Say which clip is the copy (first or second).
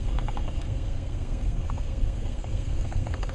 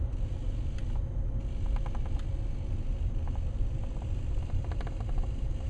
first